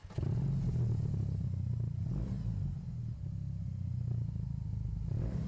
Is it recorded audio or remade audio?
recorded